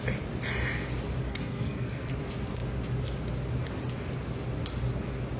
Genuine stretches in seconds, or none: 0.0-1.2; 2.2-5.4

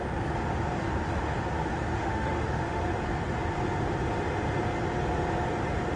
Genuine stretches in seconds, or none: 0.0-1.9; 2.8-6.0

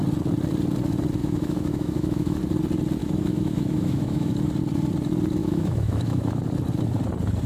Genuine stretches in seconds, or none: 0.0-1.2; 2.4-3.0; 4.3-5.4; 6.4-7.5